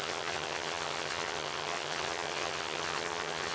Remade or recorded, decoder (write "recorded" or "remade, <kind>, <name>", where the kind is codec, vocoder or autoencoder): remade, vocoder, HiFi-GAN